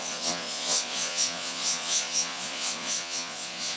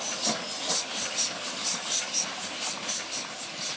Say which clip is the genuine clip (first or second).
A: second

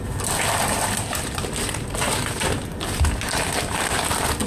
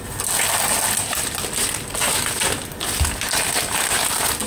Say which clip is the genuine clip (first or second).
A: second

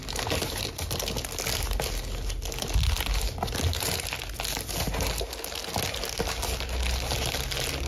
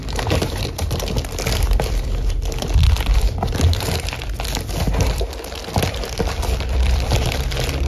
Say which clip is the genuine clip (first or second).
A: first